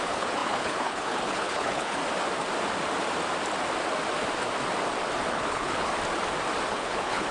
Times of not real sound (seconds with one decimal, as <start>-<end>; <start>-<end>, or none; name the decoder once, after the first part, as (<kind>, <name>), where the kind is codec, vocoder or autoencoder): 0.0-2.0 (codec, HILCodec); 5.3-5.9; 6.7-7.3